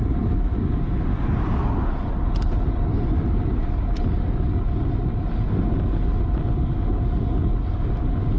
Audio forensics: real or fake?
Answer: real